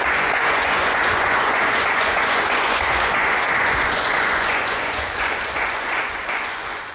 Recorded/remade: remade